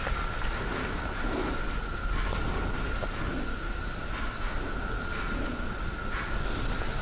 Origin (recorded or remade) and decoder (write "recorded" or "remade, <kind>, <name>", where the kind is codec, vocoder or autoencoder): recorded